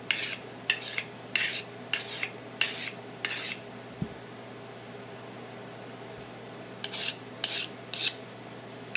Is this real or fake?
real